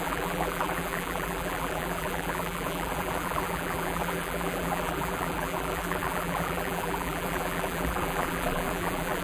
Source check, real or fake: fake